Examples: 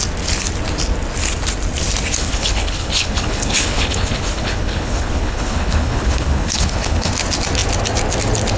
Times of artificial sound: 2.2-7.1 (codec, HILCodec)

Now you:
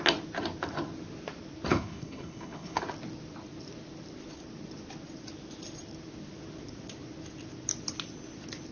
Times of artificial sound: 1.7-2.8 (codec, HILCodec)

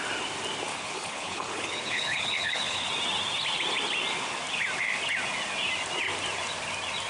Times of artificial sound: 0.7-2.9 (codec, HILCodec)

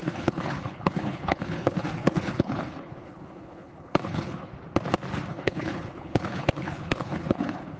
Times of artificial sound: 0.0-4.5 (codec, HILCodec); 5.3-7.8

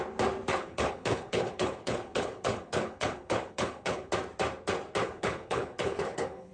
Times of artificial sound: 0.5-4.1 (codec, HILCodec); 5.0-6.5

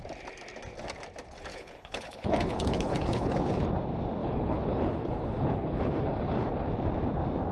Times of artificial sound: 1.5-3.6 (codec, HILCodec); 4.2-6.7